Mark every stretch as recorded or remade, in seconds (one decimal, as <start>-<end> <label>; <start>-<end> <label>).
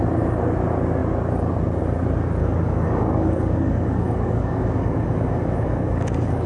0.0-2.4 recorded; 2.4-6.5 remade